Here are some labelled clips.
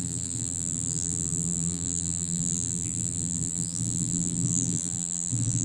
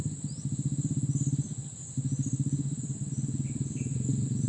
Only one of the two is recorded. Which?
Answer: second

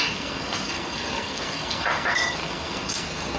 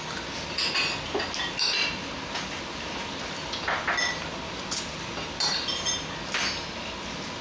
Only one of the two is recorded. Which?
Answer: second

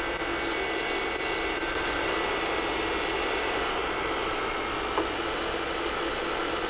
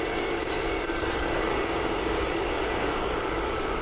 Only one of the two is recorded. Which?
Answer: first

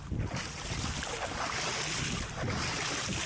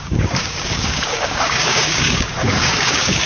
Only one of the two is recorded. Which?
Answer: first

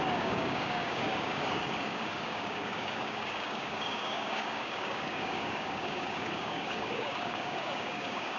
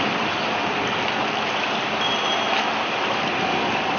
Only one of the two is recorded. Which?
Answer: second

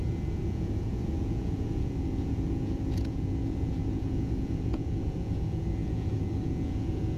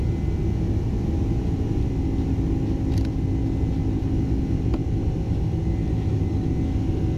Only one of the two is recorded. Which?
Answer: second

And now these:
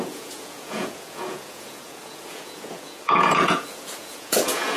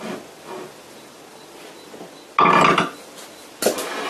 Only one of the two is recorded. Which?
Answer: second